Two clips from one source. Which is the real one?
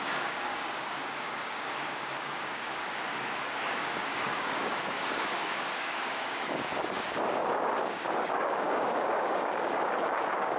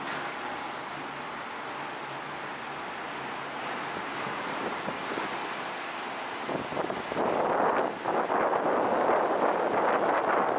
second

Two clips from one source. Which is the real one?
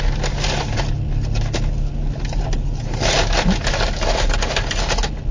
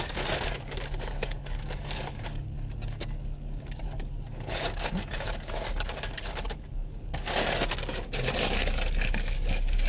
first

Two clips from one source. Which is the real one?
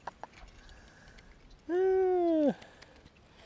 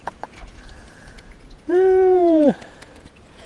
first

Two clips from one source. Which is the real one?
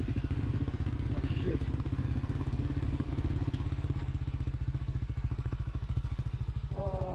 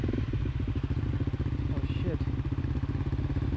second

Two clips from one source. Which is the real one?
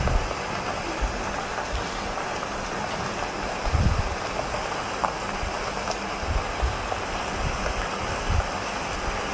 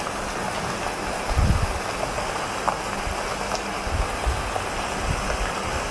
second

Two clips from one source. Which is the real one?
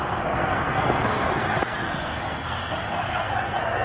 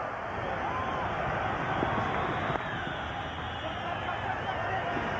second